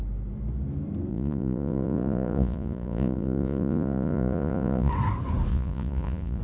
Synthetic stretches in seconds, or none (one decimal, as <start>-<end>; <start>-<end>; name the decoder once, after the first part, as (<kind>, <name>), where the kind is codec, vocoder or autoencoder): 1.1-4.9 (vocoder, Vocos); 5.5-6.4

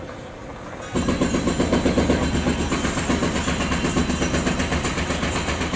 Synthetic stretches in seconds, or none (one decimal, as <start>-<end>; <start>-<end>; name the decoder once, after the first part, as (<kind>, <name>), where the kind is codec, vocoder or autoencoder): none

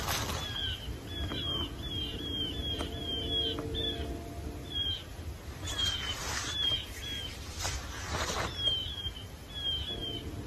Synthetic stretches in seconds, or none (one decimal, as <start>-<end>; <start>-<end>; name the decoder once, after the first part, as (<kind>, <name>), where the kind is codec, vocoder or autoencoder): 0.6-3.0 (vocoder, BigVGAN v2); 4.6-8.3; 8.8-9.5

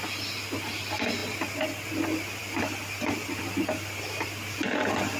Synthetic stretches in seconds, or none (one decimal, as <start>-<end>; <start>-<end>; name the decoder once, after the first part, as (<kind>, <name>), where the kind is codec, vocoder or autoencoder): none

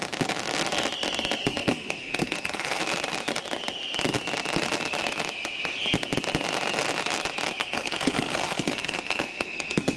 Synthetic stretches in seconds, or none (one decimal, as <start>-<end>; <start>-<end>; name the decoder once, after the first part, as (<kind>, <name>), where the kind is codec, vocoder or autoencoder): 1.5-2.8 (codec, SNAC); 7.6-10.0